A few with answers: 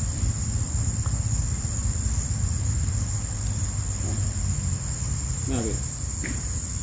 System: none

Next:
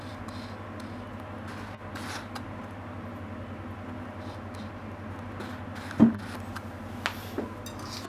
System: none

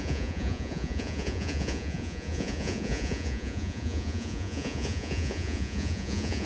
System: vocoder, Vocos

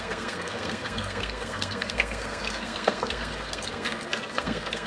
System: codec, SNAC